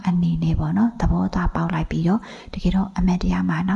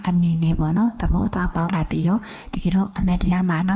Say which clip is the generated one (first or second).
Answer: second